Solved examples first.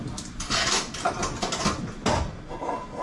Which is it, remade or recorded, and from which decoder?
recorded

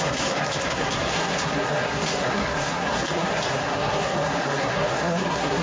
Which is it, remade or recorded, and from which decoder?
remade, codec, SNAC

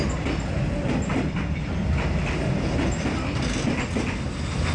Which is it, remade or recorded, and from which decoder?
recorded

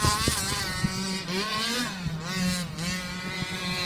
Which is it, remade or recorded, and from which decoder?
recorded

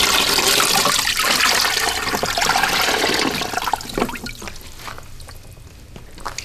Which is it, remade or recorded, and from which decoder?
recorded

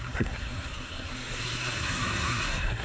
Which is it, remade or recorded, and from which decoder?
remade, codec, SNAC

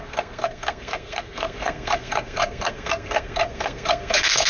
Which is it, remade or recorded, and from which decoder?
remade, codec, SNAC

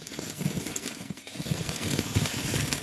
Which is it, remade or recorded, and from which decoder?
remade, codec, SNAC